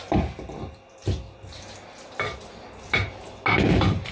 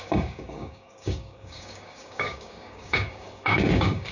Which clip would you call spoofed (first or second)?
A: second